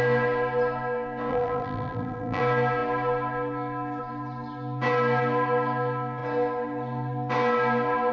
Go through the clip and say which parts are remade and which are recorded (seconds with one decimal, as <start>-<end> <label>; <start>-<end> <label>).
0.0-1.3 recorded; 1.3-2.4 remade; 2.4-8.1 recorded